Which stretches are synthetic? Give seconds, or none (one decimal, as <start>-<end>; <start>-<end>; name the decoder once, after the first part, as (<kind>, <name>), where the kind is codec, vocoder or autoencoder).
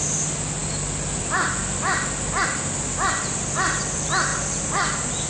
none